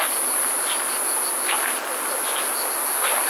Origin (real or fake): real